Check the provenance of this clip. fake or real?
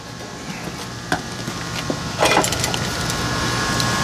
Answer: real